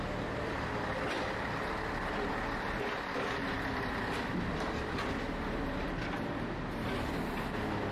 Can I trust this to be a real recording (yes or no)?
yes